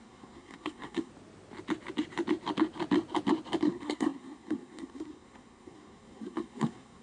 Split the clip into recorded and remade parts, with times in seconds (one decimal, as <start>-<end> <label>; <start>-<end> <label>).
0.0-1.1 remade; 1.1-3.6 recorded; 3.6-7.0 remade